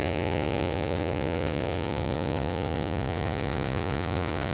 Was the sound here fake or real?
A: fake